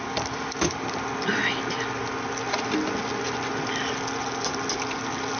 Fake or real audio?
real